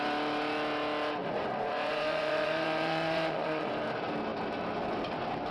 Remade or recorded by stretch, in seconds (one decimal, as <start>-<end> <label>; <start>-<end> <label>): 0.0-1.2 recorded; 1.2-3.7 remade; 3.7-5.5 recorded